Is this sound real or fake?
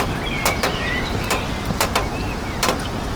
real